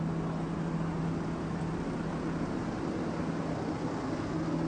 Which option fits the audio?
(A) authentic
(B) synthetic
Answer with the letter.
A